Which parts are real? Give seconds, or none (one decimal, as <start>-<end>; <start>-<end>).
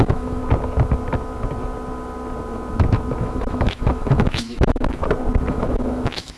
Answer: 0.4-3.2; 5.0-5.5